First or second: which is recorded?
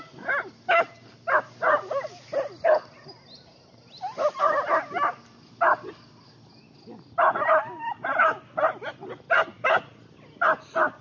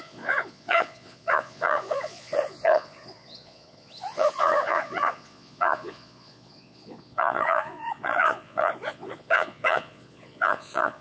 first